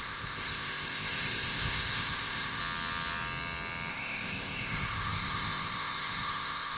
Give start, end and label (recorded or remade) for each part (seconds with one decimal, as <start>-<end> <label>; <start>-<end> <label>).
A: 0.0-2.6 remade; 2.6-3.9 recorded; 3.9-6.8 remade